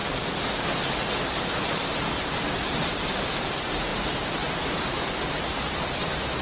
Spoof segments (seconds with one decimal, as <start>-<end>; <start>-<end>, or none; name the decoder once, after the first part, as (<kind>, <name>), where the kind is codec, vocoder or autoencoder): 2.2-6.4 (vocoder, BigVGAN v2)